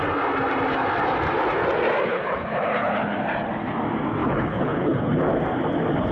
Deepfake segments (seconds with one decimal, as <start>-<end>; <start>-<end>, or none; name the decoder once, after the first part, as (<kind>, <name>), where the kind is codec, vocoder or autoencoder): 2.1-2.9 (codec, HILCodec); 4.2-5.2